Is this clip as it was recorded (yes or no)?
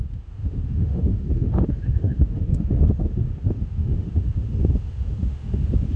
no